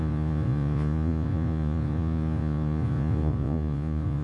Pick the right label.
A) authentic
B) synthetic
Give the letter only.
B